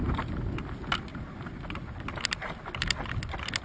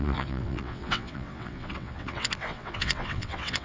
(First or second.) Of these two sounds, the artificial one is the second